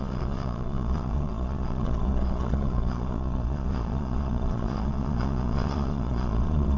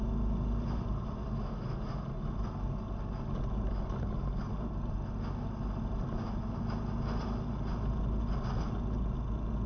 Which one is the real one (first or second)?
second